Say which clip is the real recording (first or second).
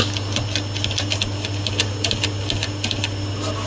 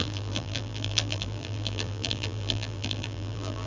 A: first